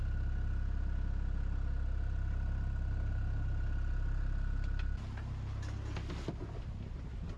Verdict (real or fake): real